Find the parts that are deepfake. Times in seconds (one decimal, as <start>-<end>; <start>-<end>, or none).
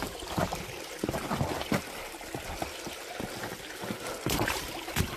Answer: 0.0-1.5; 4.6-5.2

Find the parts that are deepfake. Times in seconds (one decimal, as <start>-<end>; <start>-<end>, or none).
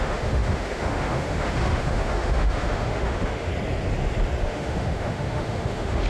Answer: 0.0-3.5; 4.4-6.1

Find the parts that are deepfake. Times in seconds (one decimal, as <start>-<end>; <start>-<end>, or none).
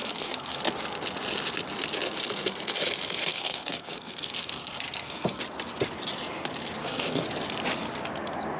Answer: 0.0-0.6; 3.3-5.4; 6.8-7.3